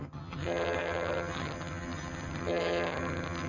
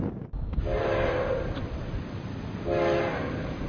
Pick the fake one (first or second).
first